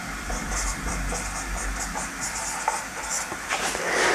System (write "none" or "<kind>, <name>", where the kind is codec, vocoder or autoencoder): vocoder, BigVGAN v2